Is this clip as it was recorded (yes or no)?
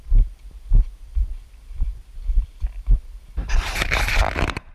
no